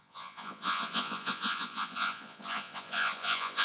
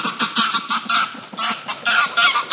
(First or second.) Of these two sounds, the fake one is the first